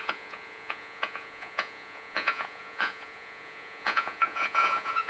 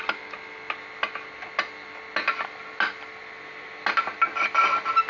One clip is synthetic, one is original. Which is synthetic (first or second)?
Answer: first